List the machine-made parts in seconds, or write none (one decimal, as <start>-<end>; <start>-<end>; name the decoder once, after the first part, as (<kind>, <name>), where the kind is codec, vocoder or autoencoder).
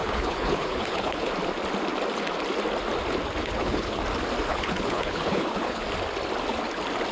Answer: 0.0-1.3 (codec, HILCodec); 3.4-4.0; 4.5-5.8